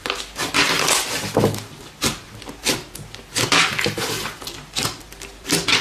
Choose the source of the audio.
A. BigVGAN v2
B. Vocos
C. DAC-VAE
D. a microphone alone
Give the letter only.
D